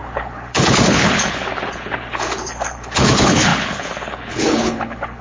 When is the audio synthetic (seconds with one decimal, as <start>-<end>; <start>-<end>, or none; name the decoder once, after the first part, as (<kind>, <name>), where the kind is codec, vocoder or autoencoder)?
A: 0.0-5.2 (codec, HILCodec)